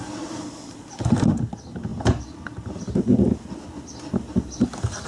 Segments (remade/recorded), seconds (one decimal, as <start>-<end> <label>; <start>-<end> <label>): 0.0-5.1 recorded